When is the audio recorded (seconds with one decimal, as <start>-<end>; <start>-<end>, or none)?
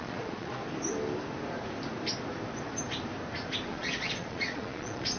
0.6-3.7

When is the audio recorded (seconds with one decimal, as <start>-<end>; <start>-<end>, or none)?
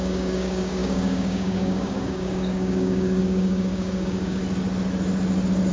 4.4-5.7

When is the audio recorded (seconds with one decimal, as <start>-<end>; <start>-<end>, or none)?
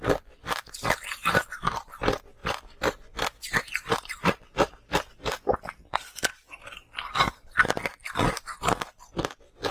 0.0-2.4; 4.5-9.7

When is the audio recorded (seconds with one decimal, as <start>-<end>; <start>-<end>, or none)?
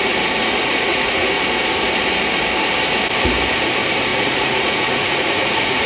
0.0-0.4; 1.3-4.1